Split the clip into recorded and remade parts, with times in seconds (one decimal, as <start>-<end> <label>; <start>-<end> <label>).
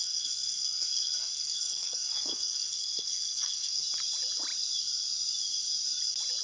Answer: 0.0-3.8 remade; 3.8-6.4 recorded